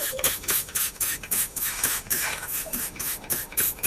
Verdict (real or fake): fake